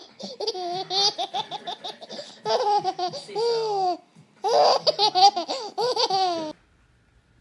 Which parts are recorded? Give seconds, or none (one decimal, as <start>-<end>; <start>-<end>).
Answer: 0.5-7.4